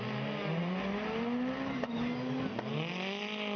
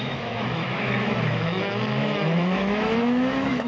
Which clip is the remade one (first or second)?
second